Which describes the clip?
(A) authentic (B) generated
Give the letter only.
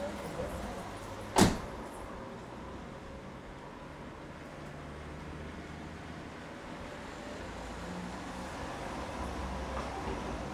A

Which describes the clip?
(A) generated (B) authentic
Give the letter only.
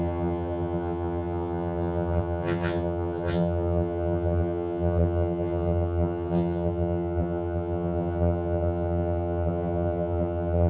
A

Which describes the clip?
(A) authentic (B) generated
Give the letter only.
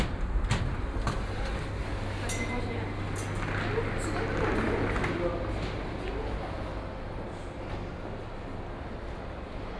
A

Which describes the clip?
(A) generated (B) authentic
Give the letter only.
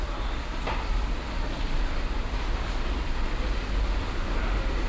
B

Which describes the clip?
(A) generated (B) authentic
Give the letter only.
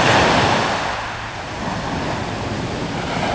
B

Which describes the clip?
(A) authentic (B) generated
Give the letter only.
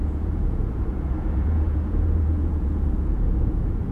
B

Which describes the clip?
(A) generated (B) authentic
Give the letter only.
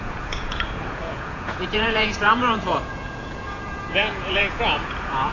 A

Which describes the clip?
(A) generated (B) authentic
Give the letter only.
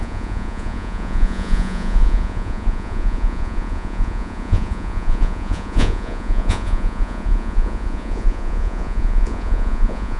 A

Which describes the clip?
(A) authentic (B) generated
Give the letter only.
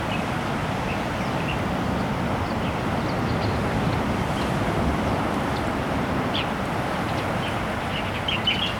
A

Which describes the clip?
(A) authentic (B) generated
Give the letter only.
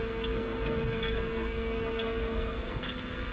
B